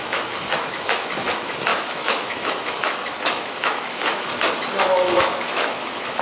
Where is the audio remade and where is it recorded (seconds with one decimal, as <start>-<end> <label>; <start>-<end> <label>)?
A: 0.0-6.2 remade